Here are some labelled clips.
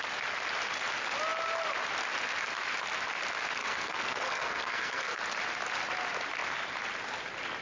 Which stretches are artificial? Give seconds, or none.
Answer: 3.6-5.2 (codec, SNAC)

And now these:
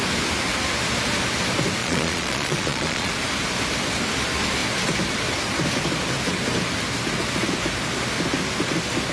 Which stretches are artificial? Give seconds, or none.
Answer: 1.8-3.1 (vocoder, Vocos)

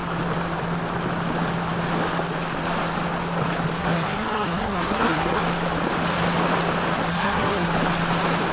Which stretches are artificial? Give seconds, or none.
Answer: 3.8-5.4 (codec, SNAC); 7.1-7.7

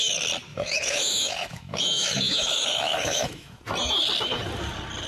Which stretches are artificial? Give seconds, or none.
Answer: 0.5-3.6 (autoencoder, DAC-VAE)

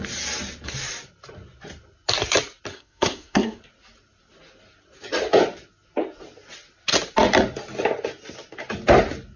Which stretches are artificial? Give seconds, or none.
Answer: 2.7-3.6 (codec, SNAC)